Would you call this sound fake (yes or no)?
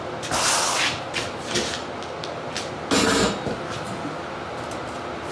no